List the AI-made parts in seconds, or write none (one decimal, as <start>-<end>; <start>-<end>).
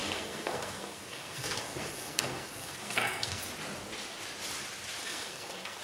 0.0-3.5; 5.0-5.8